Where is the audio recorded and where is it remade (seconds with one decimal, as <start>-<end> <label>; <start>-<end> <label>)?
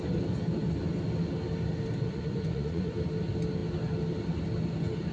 0.0-2.0 recorded; 2.0-2.9 remade; 2.9-5.1 recorded